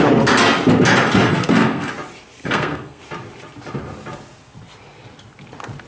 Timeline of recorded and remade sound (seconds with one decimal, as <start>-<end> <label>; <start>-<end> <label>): 0.0-1.3 recorded; 1.3-1.9 remade; 1.9-2.4 recorded; 2.4-3.0 remade; 3.0-5.9 recorded